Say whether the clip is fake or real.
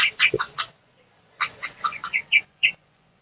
fake